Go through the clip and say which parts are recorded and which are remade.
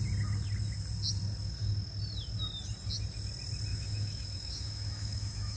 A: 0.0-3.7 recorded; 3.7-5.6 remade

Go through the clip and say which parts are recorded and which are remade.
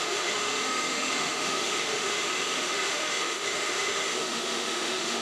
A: 0.0-5.2 remade